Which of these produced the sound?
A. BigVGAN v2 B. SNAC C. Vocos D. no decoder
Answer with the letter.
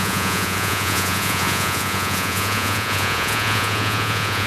C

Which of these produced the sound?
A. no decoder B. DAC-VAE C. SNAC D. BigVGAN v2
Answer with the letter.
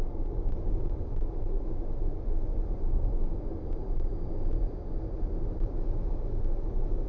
A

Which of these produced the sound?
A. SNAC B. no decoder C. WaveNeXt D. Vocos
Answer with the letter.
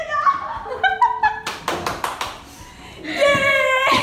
B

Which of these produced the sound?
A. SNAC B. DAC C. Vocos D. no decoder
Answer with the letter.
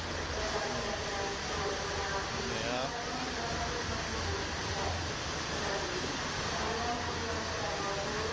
D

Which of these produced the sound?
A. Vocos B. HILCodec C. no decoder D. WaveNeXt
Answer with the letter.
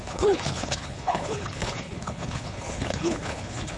B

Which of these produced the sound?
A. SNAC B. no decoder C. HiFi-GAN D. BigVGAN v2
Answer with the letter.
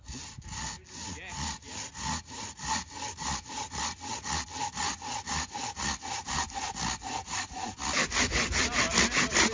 B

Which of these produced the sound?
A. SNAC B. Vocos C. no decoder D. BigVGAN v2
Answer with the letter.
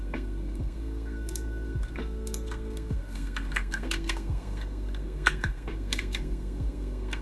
A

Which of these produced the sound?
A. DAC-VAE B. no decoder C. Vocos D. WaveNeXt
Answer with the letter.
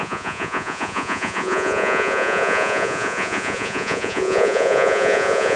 C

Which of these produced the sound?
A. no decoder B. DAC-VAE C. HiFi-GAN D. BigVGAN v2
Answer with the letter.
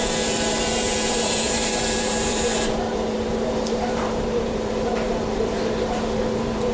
D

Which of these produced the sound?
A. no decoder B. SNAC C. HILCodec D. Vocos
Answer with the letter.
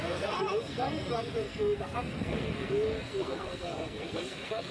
B